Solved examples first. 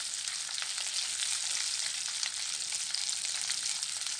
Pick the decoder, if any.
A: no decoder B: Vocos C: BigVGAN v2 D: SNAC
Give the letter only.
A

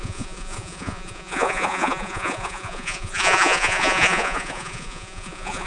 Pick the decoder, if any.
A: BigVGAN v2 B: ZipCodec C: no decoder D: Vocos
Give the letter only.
D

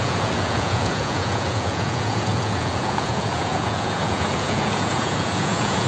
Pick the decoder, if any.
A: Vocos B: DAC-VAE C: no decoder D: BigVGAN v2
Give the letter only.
A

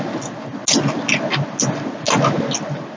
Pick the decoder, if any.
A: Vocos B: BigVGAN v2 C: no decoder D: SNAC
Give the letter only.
C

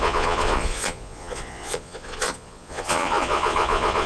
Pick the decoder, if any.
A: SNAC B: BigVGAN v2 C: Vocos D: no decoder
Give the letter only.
C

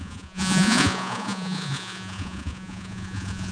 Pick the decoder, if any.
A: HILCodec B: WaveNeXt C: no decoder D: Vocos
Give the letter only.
D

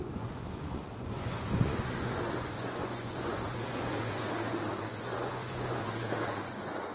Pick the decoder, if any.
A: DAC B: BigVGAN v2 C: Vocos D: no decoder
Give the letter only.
C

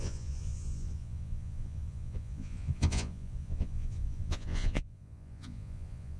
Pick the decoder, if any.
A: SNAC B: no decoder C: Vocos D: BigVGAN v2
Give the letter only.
C